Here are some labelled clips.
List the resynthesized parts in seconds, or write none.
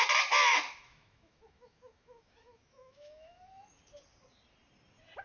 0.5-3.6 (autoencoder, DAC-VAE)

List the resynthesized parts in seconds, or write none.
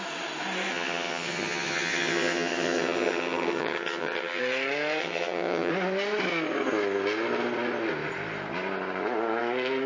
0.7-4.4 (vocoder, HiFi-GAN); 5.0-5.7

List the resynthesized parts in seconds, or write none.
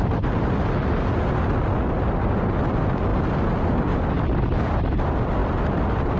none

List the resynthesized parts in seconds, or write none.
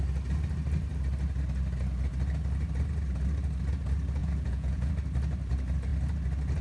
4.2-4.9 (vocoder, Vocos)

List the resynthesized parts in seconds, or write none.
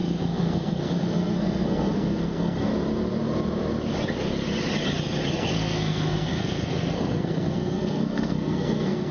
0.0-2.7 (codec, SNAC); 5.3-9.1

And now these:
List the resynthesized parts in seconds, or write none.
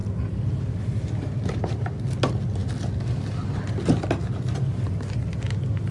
none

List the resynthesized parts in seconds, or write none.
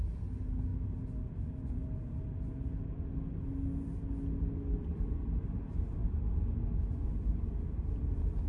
4.9-5.7 (vocoder, BigVGAN v2)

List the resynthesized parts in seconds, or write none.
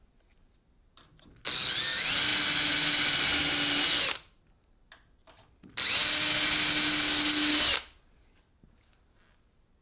none